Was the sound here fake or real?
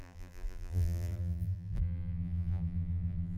fake